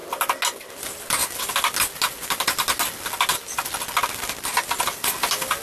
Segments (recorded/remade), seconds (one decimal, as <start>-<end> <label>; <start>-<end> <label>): 0.0-5.6 recorded